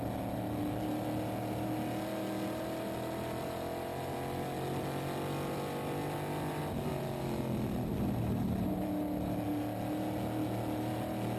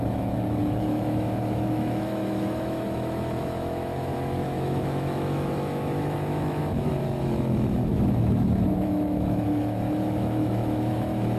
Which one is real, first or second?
first